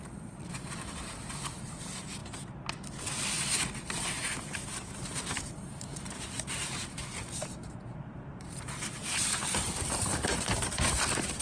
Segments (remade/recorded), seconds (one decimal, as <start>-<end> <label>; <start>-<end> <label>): 0.0-2.2 remade; 2.2-4.4 recorded; 4.4-11.4 remade